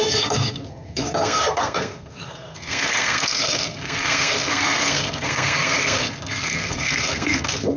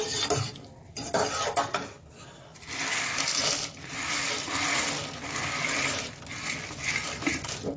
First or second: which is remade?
first